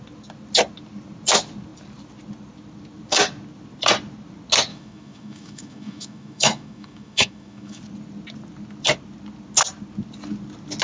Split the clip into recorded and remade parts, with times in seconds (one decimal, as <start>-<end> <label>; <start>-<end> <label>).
0.0-4.7 recorded; 4.7-7.8 remade; 7.8-10.8 recorded